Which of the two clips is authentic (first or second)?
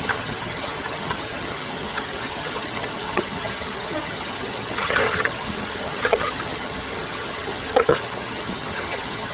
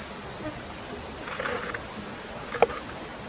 second